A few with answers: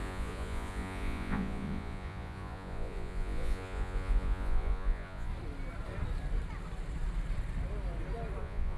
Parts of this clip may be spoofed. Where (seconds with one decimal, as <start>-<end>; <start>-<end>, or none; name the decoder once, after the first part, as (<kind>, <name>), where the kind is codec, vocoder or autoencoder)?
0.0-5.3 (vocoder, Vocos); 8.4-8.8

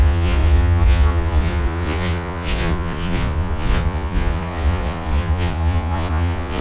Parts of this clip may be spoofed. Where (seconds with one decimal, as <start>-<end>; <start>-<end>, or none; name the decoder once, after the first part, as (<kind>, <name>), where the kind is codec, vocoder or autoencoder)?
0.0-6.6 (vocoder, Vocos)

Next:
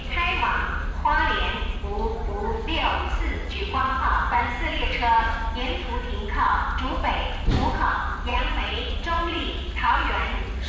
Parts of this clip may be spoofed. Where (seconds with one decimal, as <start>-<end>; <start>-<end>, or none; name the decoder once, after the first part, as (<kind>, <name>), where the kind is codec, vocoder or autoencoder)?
2.8-4.5 (vocoder, Vocos); 8.3-8.9; 9.3-10.7